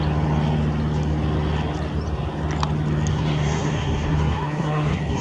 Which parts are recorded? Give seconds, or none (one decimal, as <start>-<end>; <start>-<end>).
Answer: 0.0-3.1